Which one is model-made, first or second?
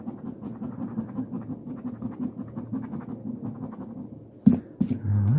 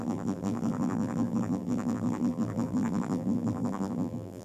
second